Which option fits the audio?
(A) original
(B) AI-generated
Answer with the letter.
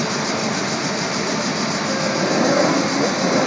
A